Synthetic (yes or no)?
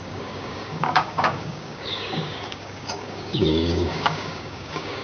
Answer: yes